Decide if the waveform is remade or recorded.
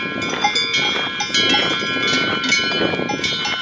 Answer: recorded